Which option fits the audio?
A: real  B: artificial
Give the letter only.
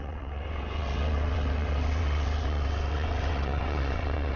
B